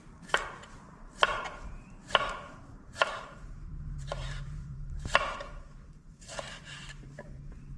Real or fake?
fake